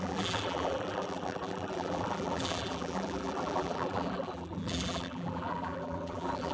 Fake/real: fake